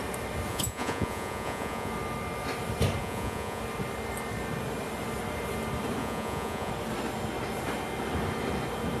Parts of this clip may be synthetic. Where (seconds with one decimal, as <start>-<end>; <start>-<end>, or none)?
0.5-1.9; 3.0-3.6; 6.0-6.7